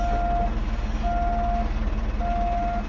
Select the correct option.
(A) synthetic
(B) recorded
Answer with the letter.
B